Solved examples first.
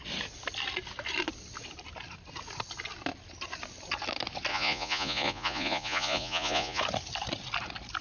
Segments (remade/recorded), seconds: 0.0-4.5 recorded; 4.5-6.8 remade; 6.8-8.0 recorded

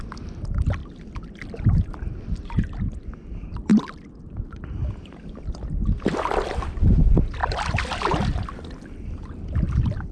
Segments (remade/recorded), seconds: 0.0-10.1 recorded

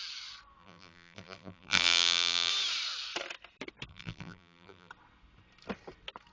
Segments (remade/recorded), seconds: 0.0-0.6 recorded; 0.6-2.5 remade; 2.5-3.9 recorded; 3.9-4.9 remade; 4.9-6.3 recorded

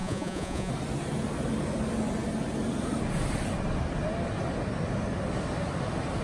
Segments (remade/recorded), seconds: 0.0-0.7 remade; 0.7-6.2 recorded

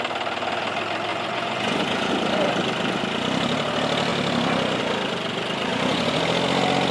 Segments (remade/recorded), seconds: 0.0-1.1 recorded; 1.1-2.1 remade; 2.1-5.7 recorded; 5.7-6.2 remade; 6.2-6.9 recorded